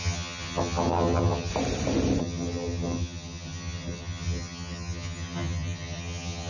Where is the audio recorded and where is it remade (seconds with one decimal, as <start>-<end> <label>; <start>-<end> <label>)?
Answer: 0.0-1.5 remade; 1.5-2.2 recorded; 2.2-6.5 remade